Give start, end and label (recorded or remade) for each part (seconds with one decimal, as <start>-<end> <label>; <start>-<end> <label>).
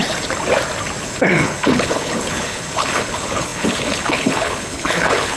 0.0-1.0 recorded; 1.0-5.4 remade